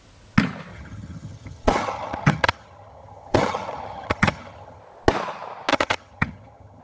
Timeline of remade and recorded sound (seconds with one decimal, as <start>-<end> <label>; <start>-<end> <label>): 0.0-0.7 recorded; 0.7-4.8 remade; 4.8-5.7 recorded; 5.7-6.8 remade